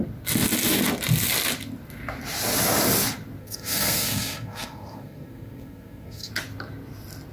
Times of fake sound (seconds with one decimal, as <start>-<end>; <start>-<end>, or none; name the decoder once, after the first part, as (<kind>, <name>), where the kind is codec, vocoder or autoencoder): 3.4-6.3 (codec, SNAC)

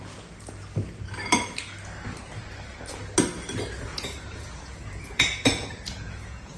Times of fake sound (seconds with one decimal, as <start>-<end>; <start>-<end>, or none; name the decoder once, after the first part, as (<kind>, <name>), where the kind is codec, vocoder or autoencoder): 3.9-6.6 (vocoder, Vocos)

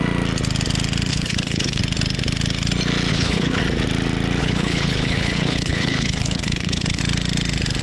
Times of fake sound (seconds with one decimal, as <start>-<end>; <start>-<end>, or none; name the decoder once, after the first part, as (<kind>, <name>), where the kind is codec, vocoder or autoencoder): 1.1-1.8 (codec, HILCodec); 3.1-3.6; 4.4-7.0

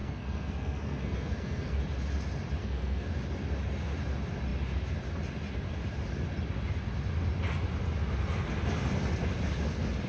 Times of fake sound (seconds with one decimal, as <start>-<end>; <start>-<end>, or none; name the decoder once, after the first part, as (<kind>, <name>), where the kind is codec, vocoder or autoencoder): 0.0-1.8 (codec, SNAC); 2.6-3.1

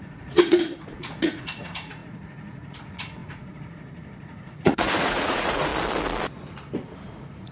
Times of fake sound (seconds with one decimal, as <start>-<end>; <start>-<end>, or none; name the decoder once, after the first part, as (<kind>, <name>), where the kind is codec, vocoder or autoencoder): 0.0-5.7 (vocoder, Vocos); 7.1-7.5

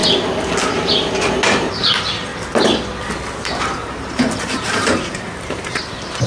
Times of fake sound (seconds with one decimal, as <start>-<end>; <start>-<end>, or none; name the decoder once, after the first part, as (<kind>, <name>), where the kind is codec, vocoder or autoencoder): 1.6-2.3 (vocoder, BigVGAN v2); 3.6-6.3

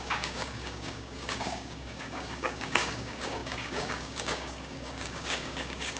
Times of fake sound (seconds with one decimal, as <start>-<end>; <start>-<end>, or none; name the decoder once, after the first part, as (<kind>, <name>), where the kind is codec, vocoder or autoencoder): 0.0-6.0 (codec, DAC)

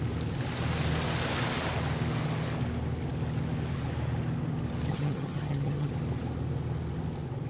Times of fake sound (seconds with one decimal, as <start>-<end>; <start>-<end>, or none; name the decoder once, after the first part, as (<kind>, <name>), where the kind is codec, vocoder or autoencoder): 4.9-5.9 (vocoder, HiFi-GAN)